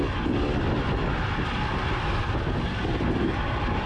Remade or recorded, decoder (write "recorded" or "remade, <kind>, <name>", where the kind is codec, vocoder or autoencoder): recorded